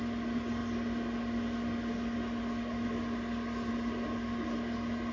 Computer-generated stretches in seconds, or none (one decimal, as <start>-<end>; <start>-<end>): none